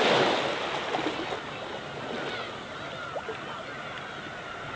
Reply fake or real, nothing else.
real